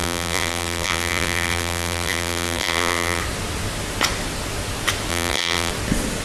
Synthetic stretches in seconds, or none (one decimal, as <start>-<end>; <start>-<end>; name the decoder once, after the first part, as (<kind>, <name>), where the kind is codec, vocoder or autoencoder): 0.0-3.2 (vocoder, BigVGAN v2); 5.1-5.7